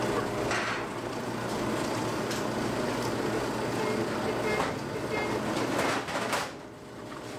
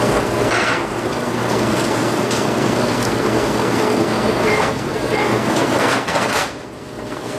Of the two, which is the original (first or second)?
first